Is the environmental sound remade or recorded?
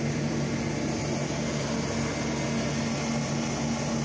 recorded